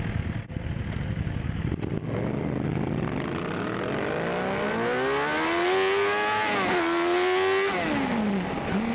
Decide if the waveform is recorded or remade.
recorded